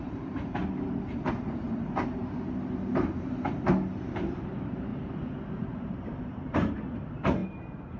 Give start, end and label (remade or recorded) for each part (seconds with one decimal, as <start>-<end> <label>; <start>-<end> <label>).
0.0-0.6 remade; 0.6-4.0 recorded; 4.0-4.9 remade; 4.9-5.5 recorded; 5.5-8.0 remade